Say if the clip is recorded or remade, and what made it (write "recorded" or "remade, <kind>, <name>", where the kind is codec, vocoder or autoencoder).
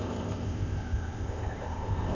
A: remade, codec, ZipCodec